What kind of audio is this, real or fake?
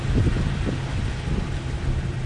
real